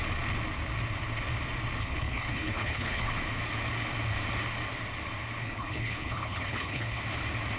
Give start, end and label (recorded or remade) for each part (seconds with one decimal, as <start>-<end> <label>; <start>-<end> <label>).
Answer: 0.0-1.8 recorded; 1.8-3.1 remade; 3.1-5.4 recorded; 5.4-7.0 remade; 7.0-7.6 recorded